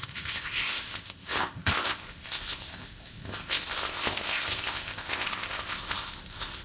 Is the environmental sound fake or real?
fake